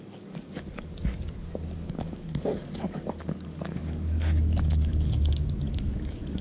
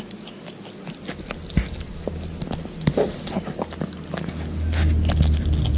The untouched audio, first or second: second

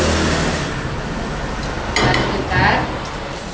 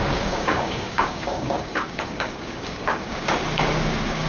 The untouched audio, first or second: first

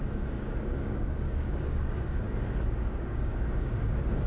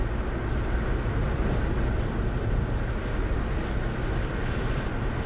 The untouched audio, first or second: second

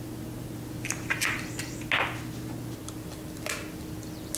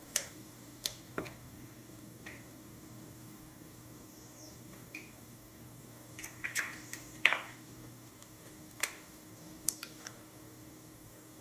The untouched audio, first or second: first